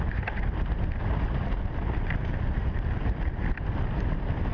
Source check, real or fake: real